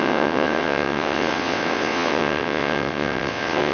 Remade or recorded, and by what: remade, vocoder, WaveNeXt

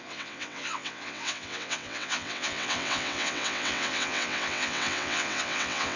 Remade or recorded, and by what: remade, vocoder, WaveNeXt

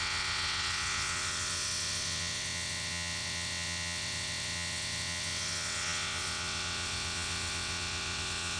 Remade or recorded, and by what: remade, vocoder, WaveNeXt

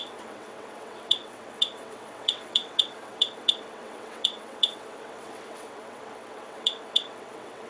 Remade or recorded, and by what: remade, vocoder, WaveNeXt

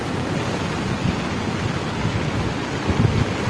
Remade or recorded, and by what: recorded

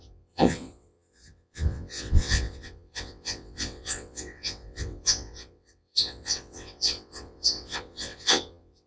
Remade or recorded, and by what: remade, vocoder, WaveNeXt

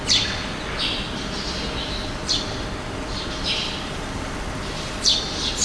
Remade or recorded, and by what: recorded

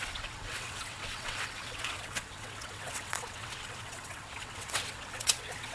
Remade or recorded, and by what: remade, vocoder, WaveNeXt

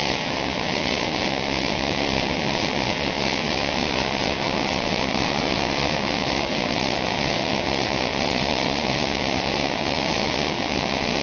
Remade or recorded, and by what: remade, vocoder, WaveNeXt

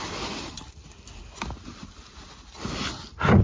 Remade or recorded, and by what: recorded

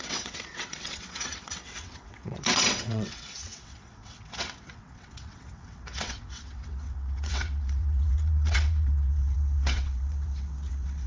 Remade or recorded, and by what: remade, vocoder, WaveNeXt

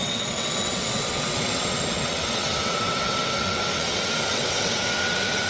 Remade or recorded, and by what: remade, vocoder, WaveNeXt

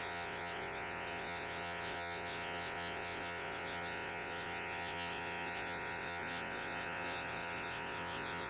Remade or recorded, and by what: remade, vocoder, WaveNeXt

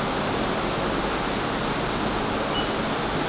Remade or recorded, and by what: recorded